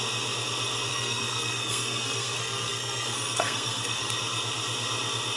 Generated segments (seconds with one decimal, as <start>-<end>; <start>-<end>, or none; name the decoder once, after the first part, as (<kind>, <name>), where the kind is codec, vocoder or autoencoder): 0.9-4.1 (codec, SNAC)